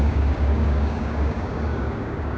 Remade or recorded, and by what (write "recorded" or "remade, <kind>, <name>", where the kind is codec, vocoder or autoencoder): remade, codec, DAC